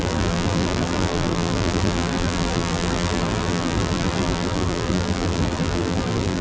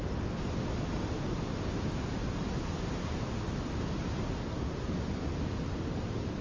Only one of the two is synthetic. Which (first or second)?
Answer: first